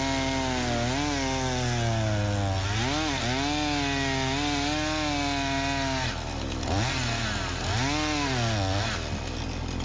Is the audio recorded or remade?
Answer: recorded